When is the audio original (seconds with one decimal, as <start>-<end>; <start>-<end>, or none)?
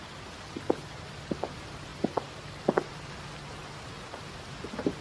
0.0-5.0